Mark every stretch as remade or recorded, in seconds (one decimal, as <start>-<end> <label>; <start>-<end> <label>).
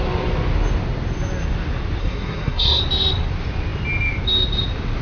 0.0-2.0 recorded; 2.0-2.8 remade; 2.8-5.0 recorded